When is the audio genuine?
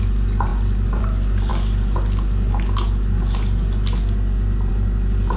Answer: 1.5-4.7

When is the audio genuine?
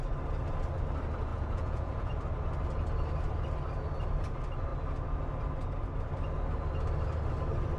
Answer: 0.0-1.3; 2.1-7.8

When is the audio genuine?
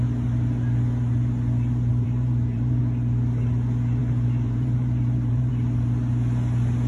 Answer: 0.0-1.9; 2.8-4.0; 5.5-6.9